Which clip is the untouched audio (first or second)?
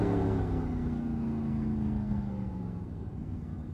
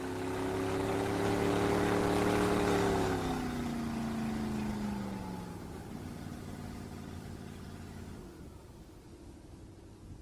second